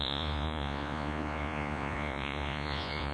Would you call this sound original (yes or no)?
no